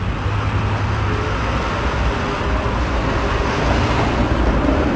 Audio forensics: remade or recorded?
recorded